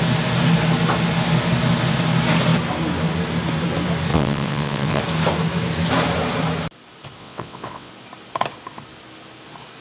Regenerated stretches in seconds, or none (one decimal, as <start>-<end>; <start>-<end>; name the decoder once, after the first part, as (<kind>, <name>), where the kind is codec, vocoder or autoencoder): 4.1-5.0 (vocoder, WaveNeXt); 7.2-7.9